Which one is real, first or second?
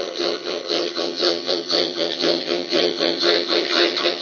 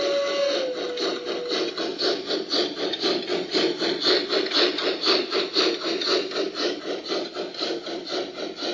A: second